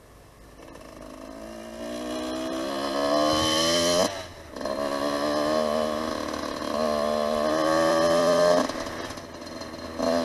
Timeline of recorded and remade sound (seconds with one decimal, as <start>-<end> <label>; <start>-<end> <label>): 0.0-7.9 recorded; 7.9-8.6 remade; 8.6-10.2 recorded

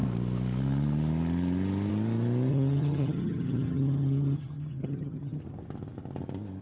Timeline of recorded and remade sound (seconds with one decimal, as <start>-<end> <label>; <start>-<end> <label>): 0.0-2.5 recorded; 2.5-5.4 remade; 5.4-6.6 recorded